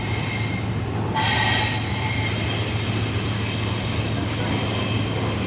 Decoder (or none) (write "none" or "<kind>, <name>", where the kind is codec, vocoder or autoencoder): none